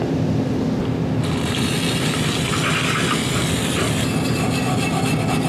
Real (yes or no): yes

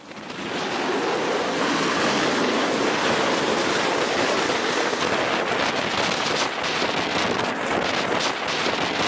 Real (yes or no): yes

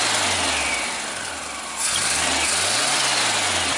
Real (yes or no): yes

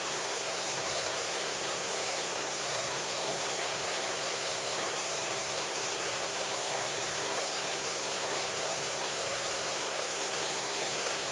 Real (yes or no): no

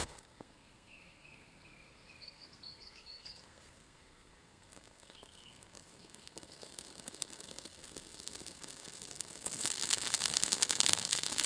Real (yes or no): no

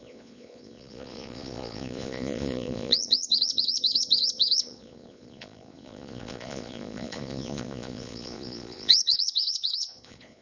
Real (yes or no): no